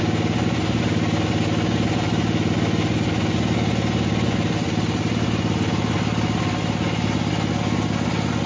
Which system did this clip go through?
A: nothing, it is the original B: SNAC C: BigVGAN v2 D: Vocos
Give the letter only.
A